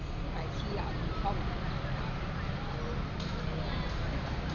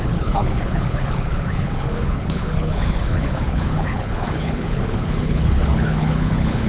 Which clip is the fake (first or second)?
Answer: second